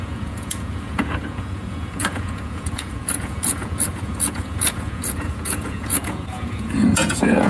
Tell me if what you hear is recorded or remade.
remade